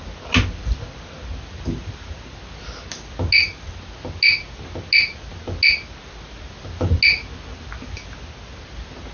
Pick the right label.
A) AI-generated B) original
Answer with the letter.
B